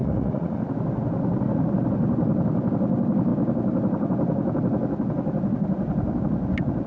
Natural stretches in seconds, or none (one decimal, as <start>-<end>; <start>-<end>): 0.6-6.9